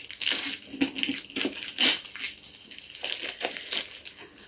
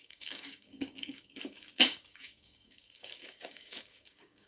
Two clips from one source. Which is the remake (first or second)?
second